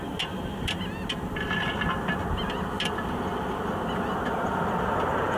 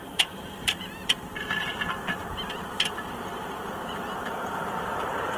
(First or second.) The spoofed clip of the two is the second